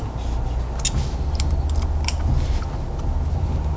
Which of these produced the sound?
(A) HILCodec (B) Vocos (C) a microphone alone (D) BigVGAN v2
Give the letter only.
C